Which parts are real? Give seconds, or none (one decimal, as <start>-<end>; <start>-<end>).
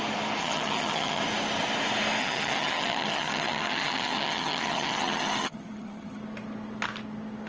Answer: 0.0-0.4; 1.2-2.2; 6.2-7.5